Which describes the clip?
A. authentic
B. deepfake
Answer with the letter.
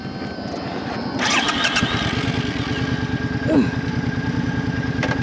A